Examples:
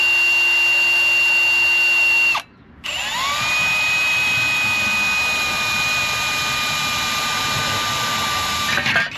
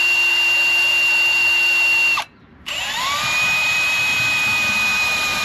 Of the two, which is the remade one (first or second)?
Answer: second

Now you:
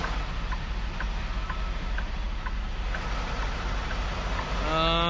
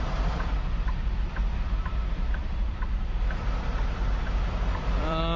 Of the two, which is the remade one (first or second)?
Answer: second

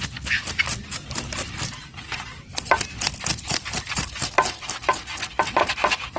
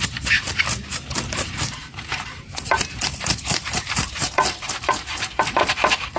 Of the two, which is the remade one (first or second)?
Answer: second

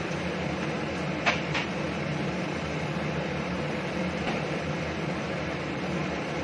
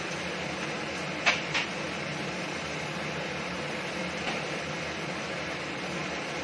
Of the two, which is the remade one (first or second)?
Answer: first